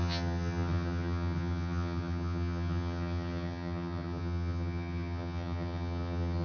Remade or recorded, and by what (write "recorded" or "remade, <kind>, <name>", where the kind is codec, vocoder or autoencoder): remade, vocoder, HiFi-GAN